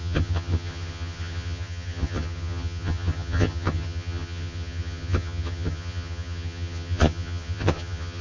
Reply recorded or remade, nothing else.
remade